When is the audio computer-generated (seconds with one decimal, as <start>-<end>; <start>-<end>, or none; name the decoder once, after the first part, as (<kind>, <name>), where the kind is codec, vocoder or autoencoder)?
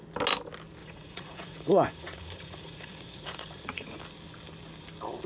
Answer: 0.8-4.0 (vocoder, Vocos)